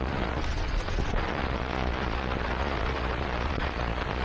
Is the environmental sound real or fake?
fake